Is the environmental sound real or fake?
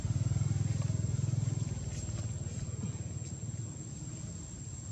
real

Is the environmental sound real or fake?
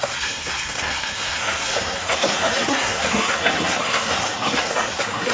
fake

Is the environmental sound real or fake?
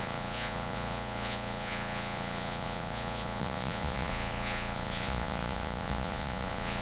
fake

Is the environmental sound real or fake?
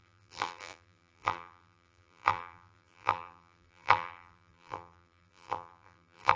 fake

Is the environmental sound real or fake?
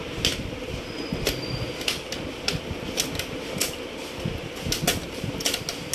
real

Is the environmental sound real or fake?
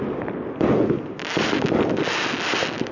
real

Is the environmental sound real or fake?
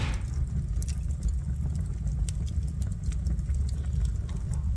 real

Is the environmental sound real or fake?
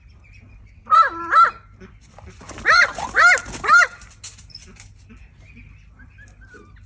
real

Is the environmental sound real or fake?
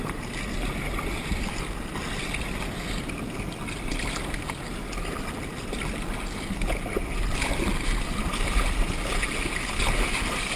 real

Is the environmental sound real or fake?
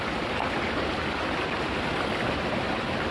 real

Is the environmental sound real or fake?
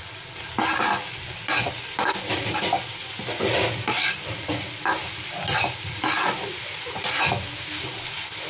real